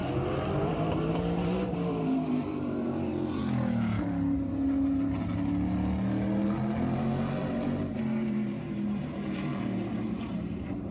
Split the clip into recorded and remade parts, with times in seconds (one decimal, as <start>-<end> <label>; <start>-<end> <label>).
0.0-0.7 recorded; 0.7-3.4 remade; 3.4-7.9 recorded; 7.9-9.5 remade; 9.5-10.2 recorded; 10.2-10.9 remade